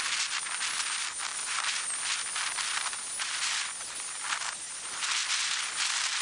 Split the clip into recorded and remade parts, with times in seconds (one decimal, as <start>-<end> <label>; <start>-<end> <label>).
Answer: 0.0-1.3 recorded; 1.3-1.9 remade; 1.9-6.2 recorded